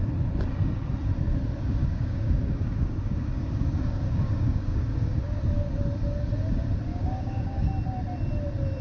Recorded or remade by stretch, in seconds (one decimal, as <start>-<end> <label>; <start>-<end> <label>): 0.0-1.8 recorded; 1.8-5.4 remade; 5.4-6.9 recorded; 6.9-7.7 remade; 7.7-8.8 recorded